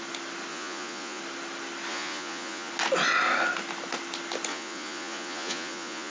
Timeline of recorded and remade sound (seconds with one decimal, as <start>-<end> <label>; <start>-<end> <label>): 0.0-0.5 recorded; 0.5-1.2 remade; 1.2-1.9 recorded; 1.9-2.7 remade; 2.7-4.5 recorded; 4.5-6.1 remade